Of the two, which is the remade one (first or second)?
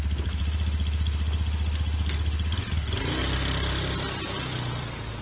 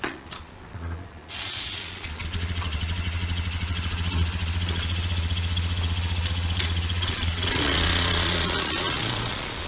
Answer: second